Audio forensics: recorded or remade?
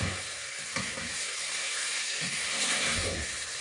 remade